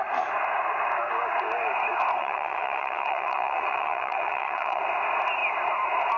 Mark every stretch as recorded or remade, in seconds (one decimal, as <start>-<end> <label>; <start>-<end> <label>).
0.0-2.2 recorded; 2.2-4.8 remade; 4.8-6.2 recorded